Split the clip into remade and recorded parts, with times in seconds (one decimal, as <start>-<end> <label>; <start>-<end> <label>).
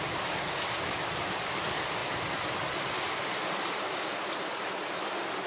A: 0.0-5.5 recorded